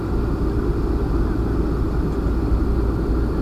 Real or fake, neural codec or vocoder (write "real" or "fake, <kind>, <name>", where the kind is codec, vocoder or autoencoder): real